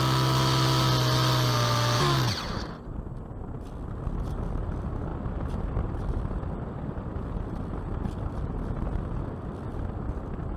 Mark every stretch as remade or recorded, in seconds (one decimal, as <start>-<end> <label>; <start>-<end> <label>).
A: 0.0-10.6 recorded